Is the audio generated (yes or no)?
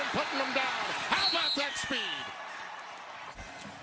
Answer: no